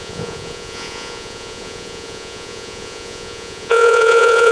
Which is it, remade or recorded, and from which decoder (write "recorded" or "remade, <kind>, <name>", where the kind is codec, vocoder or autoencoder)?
remade, vocoder, Vocos